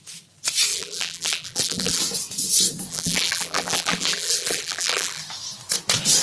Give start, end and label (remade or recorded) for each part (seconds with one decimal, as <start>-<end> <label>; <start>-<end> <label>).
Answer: 0.0-0.7 recorded; 0.7-2.0 remade; 2.0-2.9 recorded; 2.9-5.2 remade; 5.2-6.2 recorded